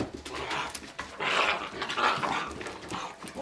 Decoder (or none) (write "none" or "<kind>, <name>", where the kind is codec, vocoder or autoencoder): none